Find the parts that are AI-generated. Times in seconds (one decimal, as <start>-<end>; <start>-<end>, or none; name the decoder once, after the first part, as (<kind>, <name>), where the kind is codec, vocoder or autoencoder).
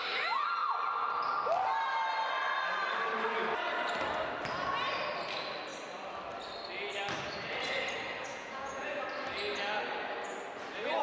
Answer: 8.3-9.0 (vocoder, Vocos)